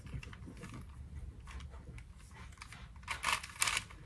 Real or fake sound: real